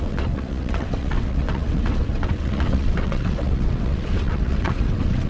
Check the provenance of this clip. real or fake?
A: fake